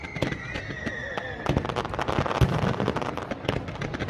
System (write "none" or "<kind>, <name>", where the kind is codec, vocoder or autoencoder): none